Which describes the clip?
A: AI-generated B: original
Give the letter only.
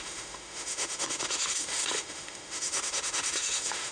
A